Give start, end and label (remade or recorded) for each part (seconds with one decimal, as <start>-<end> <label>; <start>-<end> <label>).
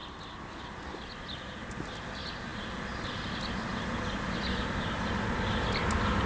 0.0-6.3 recorded